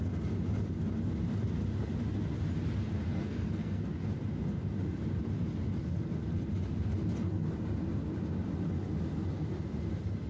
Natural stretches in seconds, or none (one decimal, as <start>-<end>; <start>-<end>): 0.0-3.1; 3.8-10.3